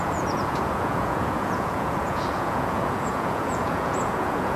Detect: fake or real fake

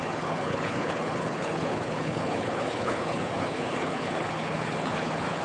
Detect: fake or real fake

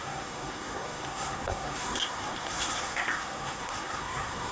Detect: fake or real fake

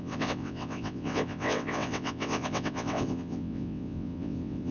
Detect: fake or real fake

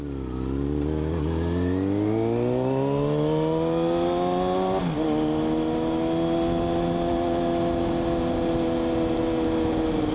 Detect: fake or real real